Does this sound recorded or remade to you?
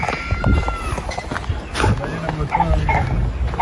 recorded